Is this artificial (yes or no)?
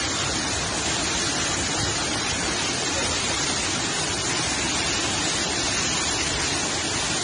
no